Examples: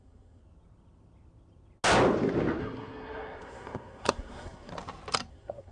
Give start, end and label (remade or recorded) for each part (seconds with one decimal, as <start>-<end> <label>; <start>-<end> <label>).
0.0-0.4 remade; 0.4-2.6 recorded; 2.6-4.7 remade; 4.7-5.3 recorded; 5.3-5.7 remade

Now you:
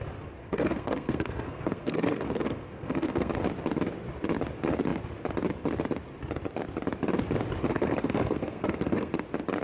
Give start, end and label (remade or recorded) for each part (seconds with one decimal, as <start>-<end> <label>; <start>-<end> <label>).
0.0-0.4 recorded; 0.4-3.3 remade; 3.3-7.7 recorded; 7.7-9.1 remade; 9.1-9.6 recorded

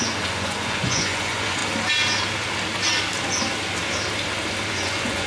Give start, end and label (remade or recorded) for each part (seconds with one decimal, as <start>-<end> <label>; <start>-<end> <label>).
0.0-1.6 remade; 1.6-4.7 recorded; 4.7-5.3 remade

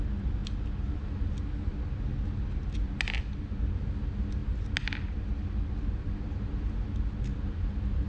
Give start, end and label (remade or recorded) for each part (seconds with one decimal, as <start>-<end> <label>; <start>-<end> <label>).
0.0-8.1 recorded

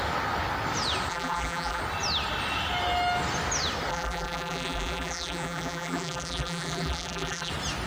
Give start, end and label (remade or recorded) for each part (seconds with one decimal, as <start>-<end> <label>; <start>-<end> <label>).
0.0-1.1 recorded; 1.1-1.8 remade; 1.8-3.9 recorded; 3.9-7.5 remade; 7.5-7.9 recorded

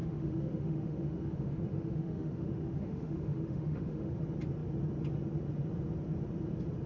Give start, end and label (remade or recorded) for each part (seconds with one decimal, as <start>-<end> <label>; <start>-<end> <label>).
0.0-4.1 remade; 4.1-6.9 recorded

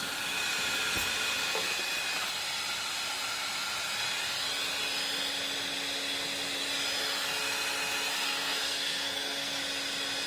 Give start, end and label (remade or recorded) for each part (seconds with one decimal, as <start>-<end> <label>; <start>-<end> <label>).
0.0-8.1 recorded; 8.1-9.6 remade; 9.6-10.3 recorded

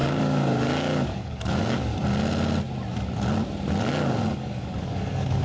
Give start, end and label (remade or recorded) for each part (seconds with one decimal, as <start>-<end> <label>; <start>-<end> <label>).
0.0-1.9 remade; 1.9-4.3 recorded; 4.3-5.4 remade